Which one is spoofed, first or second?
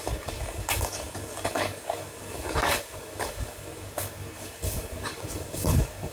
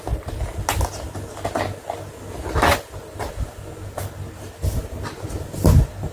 first